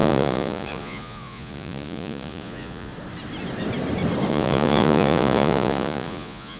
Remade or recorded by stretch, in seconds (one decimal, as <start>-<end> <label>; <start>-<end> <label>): 0.0-2.9 remade; 2.9-4.3 recorded; 4.3-6.6 remade

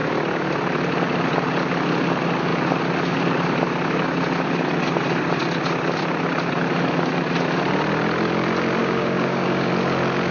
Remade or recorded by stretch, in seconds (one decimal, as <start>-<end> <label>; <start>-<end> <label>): 0.0-8.8 recorded; 8.8-9.7 remade; 9.7-10.3 recorded

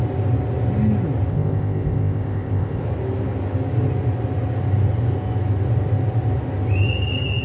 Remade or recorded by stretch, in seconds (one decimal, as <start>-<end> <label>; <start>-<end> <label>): 0.0-1.3 recorded; 1.3-2.8 remade; 2.8-7.4 recorded

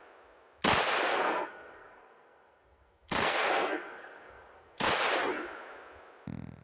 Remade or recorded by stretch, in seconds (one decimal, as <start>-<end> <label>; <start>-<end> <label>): 0.0-1.1 recorded; 1.1-4.9 remade; 4.9-6.6 recorded

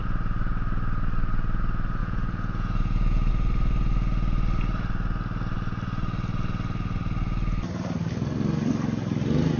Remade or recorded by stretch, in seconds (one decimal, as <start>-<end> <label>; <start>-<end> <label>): 0.0-2.0 recorded; 2.0-3.3 remade; 3.3-9.6 recorded

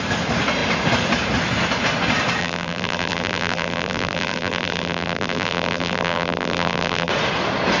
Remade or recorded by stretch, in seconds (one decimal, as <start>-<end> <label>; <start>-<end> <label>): 0.0-2.4 recorded; 2.4-7.1 remade; 7.1-7.8 recorded

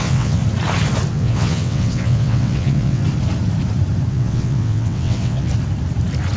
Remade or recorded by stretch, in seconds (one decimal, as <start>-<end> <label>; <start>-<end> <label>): 0.0-0.4 remade; 0.4-1.1 recorded; 1.1-3.0 remade; 3.0-4.1 recorded; 4.1-5.5 remade; 5.5-6.4 recorded